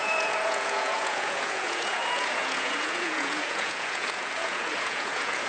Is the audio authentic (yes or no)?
no